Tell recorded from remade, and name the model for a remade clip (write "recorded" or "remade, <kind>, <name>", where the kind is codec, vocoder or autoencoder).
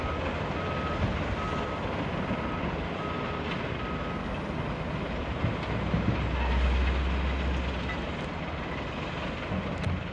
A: recorded